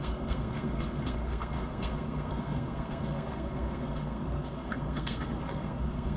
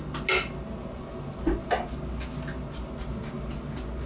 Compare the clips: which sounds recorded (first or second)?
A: second